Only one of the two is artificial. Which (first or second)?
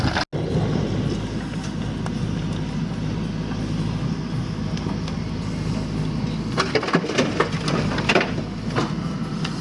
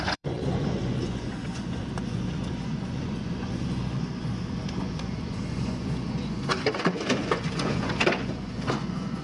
second